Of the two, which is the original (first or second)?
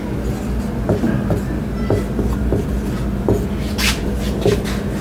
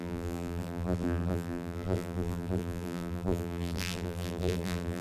first